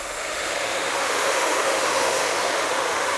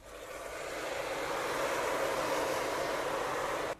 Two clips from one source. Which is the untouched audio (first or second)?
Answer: second